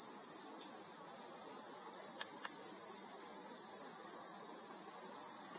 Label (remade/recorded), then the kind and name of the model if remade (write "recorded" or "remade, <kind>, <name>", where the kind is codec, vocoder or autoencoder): recorded